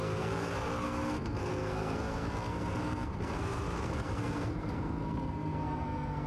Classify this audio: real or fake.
fake